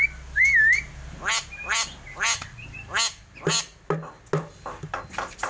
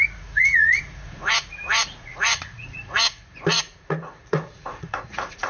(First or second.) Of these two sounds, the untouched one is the first